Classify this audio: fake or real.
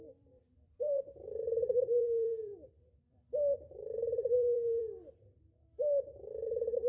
fake